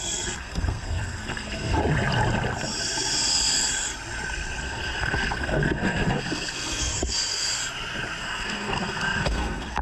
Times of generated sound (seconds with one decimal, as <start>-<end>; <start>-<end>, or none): 0.0-1.8; 4.6-7.6; 8.2-9.8